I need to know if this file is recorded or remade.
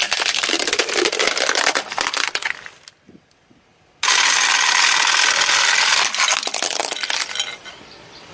recorded